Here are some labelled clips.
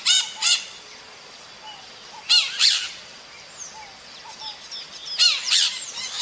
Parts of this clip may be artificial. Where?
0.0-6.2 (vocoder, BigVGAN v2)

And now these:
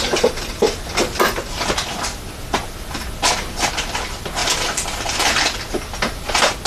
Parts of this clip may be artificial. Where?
none

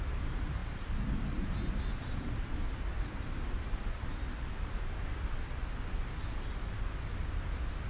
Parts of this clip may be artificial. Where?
0.6-1.2 (vocoder, BigVGAN v2)

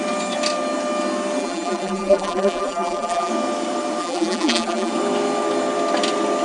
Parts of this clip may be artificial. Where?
1.4-3.3 (vocoder, BigVGAN v2); 4.0-4.9

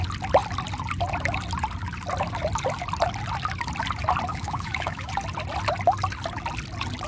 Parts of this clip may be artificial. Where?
4.3-5.1 (autoencoder, DAC-VAE)